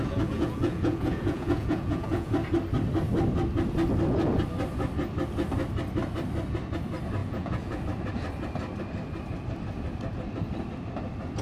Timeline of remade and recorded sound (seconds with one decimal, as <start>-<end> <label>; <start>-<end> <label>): 0.0-2.3 remade; 2.3-7.2 recorded; 7.2-7.8 remade; 7.8-11.4 recorded